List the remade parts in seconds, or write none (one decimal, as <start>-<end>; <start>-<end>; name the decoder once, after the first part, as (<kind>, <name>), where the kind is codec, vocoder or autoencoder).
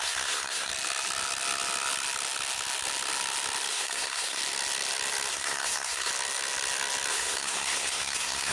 0.0-0.7 (codec, SNAC); 3.7-4.4; 5.3-6.1; 7.1-8.5